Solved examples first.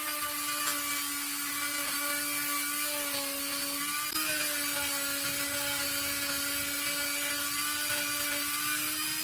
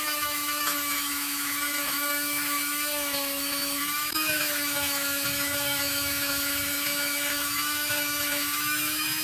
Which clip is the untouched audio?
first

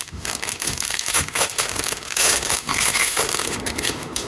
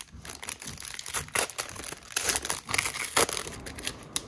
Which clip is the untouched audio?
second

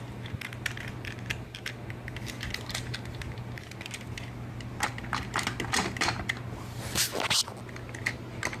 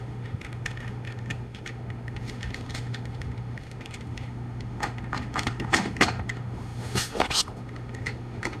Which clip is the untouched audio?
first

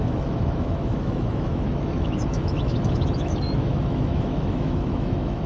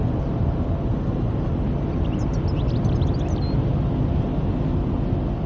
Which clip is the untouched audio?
second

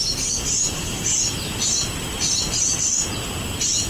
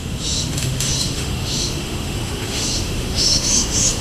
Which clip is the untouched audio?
first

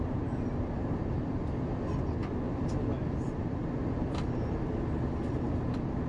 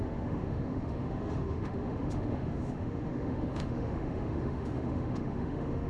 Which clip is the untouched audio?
first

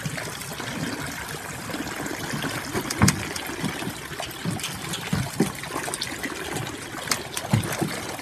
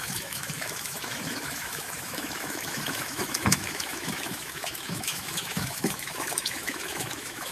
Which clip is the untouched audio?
first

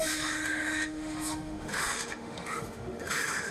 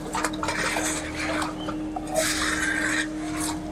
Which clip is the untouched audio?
second